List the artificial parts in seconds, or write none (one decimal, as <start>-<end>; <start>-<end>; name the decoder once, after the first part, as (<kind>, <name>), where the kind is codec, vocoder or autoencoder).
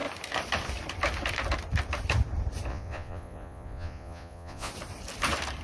2.7-4.7 (vocoder, Vocos)